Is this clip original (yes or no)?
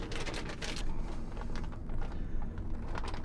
yes